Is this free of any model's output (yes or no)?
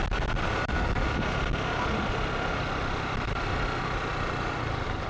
yes